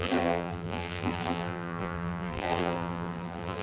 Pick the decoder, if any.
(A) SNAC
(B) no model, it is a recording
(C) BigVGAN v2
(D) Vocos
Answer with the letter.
C